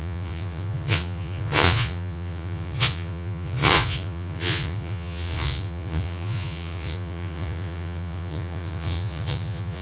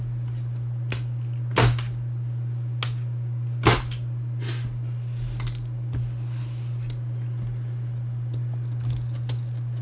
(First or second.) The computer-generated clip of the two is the first